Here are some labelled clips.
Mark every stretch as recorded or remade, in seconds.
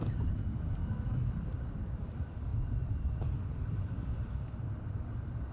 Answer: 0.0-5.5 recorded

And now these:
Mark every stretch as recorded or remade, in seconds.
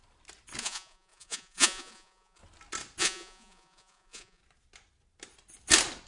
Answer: 0.0-0.6 recorded; 0.6-2.4 remade; 2.4-3.0 recorded; 3.0-4.4 remade; 4.4-6.1 recorded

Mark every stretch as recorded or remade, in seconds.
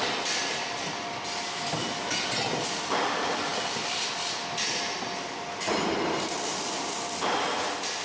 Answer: 0.0-8.0 recorded